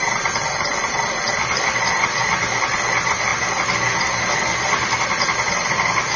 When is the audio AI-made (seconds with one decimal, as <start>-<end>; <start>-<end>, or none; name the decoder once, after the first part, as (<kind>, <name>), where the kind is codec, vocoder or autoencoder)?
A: none